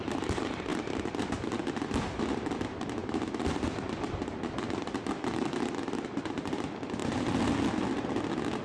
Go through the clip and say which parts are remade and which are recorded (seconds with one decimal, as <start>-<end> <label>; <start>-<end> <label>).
0.0-0.7 recorded; 0.7-1.3 remade; 1.3-7.0 recorded; 7.0-7.5 remade; 7.5-8.6 recorded

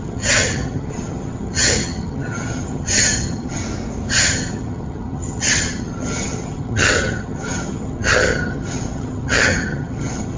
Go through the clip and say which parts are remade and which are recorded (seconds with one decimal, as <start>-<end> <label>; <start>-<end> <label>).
0.0-3.6 remade; 3.6-4.1 recorded; 4.1-10.4 remade

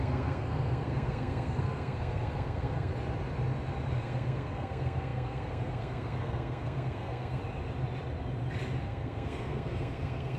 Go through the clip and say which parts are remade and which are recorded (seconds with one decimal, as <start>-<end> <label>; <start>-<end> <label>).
0.0-2.9 remade; 2.9-4.0 recorded; 4.0-7.4 remade; 7.4-8.8 recorded; 8.8-10.4 remade

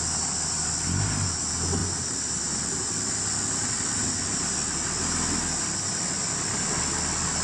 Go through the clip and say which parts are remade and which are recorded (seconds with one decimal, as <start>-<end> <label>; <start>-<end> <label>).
0.0-7.4 recorded